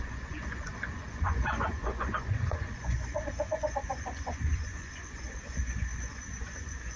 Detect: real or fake fake